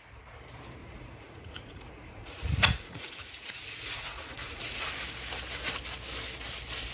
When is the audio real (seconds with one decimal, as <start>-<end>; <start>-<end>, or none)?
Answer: 0.0-0.8; 4.9-6.9